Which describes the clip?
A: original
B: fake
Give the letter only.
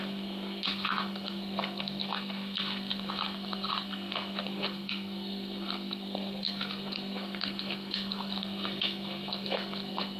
B